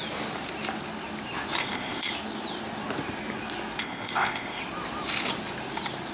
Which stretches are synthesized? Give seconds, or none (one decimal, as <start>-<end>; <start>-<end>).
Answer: 1.6-2.1; 3.8-4.6